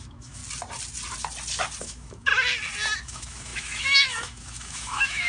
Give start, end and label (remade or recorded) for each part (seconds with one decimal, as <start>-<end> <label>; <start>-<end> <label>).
0.0-0.4 remade; 0.4-1.8 recorded; 1.8-2.3 remade; 2.3-3.0 recorded; 3.0-5.3 remade